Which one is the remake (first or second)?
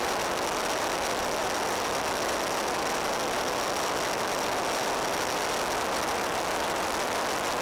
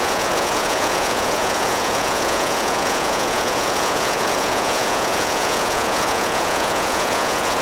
second